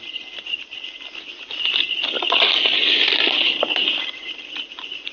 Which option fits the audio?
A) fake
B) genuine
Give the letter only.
B